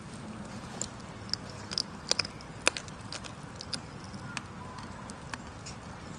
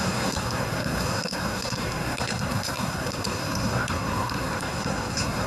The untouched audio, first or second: first